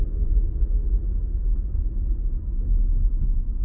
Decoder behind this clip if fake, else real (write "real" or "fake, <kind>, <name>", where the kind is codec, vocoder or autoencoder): real